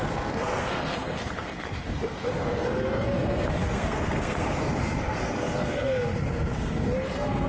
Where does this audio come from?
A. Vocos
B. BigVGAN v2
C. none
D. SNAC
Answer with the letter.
D